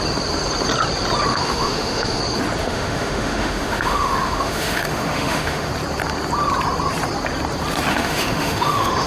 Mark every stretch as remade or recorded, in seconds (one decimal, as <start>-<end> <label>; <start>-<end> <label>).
0.0-1.3 recorded; 1.3-2.2 remade; 2.2-2.6 recorded; 2.6-5.7 remade; 5.7-7.9 recorded; 7.9-9.1 remade